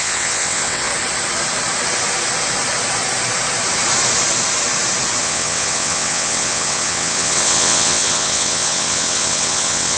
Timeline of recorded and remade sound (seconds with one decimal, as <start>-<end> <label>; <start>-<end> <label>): 0.0-0.9 remade; 0.9-5.2 recorded; 5.2-10.0 remade